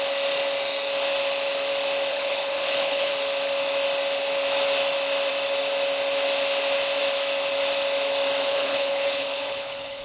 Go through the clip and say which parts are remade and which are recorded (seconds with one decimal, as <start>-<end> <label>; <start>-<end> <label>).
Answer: 0.0-2.1 recorded; 2.1-3.1 remade; 3.1-8.4 recorded; 8.4-10.0 remade